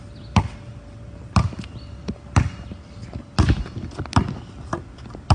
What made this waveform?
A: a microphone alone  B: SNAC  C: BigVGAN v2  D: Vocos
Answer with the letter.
A